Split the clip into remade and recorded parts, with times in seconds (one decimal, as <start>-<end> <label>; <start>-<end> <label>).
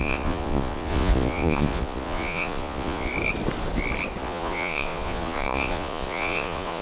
0.0-3.1 remade; 3.1-4.2 recorded; 4.2-6.8 remade